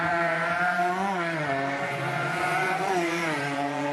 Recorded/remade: remade